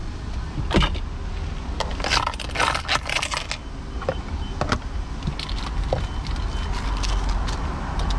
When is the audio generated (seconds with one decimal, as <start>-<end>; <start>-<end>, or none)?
1.9-2.6